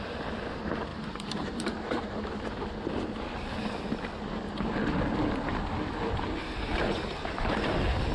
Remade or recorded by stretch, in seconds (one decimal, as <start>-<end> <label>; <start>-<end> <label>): 0.0-0.9 recorded; 0.9-2.4 remade; 2.4-8.1 recorded